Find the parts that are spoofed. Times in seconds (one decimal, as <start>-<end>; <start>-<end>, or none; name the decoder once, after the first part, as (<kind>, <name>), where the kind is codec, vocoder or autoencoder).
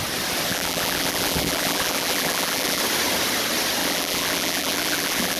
0.5-2.8 (vocoder, BigVGAN v2); 3.8-5.4